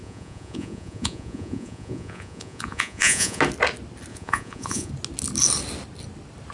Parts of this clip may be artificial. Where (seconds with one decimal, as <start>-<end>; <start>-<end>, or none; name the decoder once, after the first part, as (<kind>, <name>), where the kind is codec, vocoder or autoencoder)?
0.0-3.4 (vocoder, Vocos); 4.1-4.9